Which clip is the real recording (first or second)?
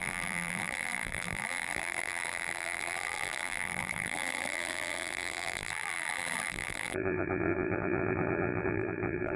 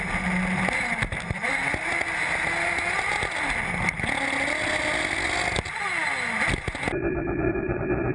second